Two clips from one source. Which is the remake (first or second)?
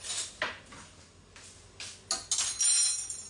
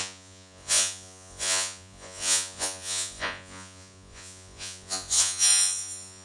second